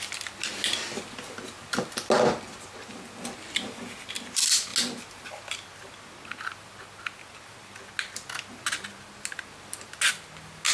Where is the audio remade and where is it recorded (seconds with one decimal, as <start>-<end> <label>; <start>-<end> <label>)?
0.0-10.7 recorded